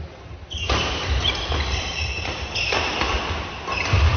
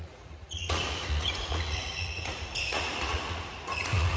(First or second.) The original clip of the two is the first